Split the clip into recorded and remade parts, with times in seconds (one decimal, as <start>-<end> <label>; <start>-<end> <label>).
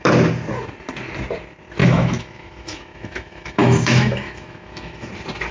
0.0-1.8 recorded; 1.8-5.1 remade; 5.1-5.5 recorded